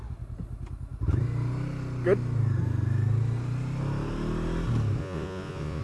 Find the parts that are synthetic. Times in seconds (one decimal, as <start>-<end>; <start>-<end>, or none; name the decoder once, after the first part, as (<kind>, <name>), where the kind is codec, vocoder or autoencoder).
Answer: 5.0-5.8 (vocoder, Vocos)